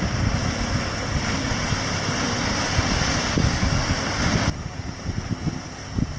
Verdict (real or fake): real